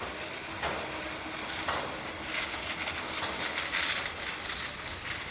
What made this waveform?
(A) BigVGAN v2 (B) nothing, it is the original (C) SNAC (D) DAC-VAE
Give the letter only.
B